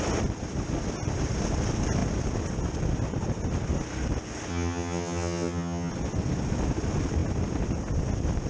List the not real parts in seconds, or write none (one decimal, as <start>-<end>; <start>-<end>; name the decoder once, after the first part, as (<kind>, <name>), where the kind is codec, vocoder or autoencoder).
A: 4.5-5.9 (vocoder, HiFi-GAN)